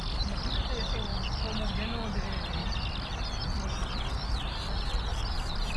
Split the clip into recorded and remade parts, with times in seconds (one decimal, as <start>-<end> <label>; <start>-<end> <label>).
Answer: 0.0-5.8 recorded